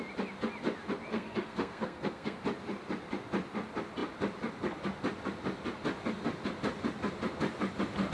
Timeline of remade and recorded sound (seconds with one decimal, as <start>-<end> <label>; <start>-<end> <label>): 0.0-1.1 recorded; 1.1-2.4 remade; 2.4-8.1 recorded